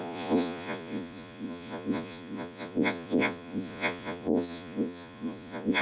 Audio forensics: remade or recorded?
remade